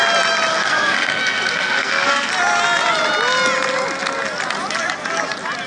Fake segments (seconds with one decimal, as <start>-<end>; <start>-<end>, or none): 0.5-2.3